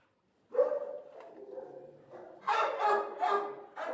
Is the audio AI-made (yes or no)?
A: no